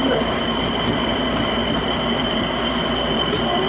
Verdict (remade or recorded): remade